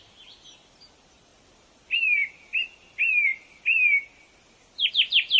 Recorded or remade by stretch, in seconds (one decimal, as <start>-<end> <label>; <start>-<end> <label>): 0.0-5.4 recorded